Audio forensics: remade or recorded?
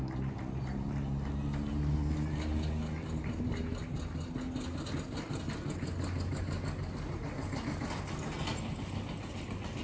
recorded